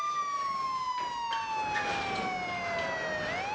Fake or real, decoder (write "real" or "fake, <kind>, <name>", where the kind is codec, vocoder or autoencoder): real